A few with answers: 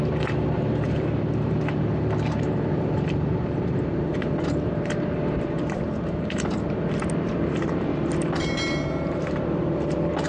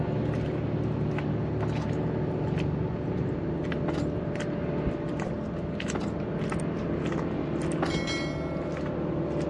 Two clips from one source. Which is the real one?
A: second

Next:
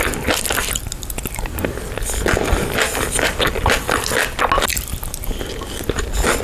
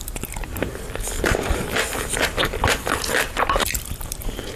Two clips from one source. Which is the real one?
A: first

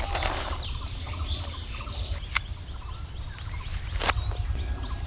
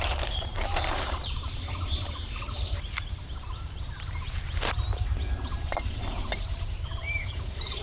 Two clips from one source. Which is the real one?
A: first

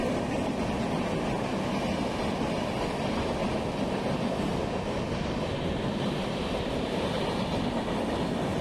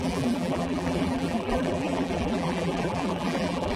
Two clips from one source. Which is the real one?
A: first